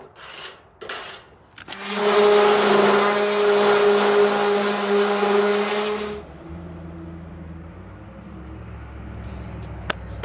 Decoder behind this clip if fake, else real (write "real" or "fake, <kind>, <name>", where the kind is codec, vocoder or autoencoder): real